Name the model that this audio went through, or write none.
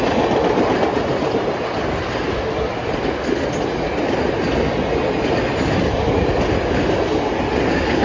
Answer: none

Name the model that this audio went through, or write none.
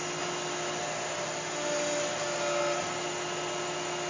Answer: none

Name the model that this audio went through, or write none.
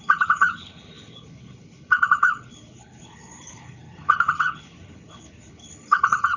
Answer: codec, HILCodec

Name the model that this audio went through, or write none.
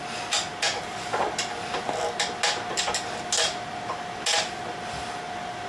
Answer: none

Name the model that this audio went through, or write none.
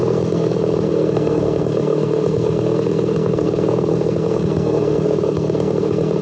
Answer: codec, SNAC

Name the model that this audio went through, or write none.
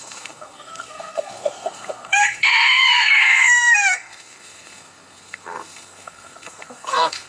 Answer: codec, SNAC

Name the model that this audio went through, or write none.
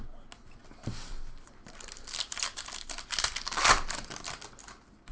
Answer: none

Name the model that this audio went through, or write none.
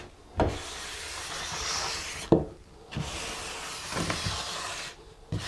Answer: none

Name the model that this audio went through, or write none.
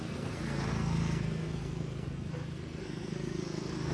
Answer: codec, SNAC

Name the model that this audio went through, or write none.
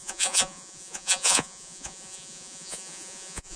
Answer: vocoder, Vocos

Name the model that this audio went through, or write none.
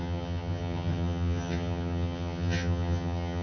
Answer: vocoder, HiFi-GAN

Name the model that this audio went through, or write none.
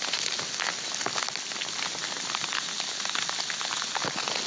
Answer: none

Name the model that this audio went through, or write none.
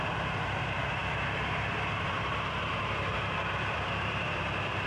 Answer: vocoder, BigVGAN v2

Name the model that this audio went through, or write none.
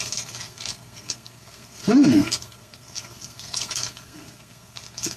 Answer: codec, SNAC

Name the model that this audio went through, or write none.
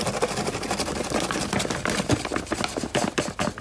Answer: none